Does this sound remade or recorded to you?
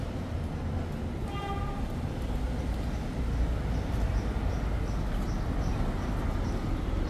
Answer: recorded